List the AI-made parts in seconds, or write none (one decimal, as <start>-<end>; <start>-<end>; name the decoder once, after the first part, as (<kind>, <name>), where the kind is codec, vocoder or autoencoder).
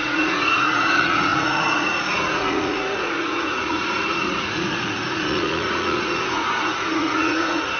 0.0-7.8 (vocoder, Vocos)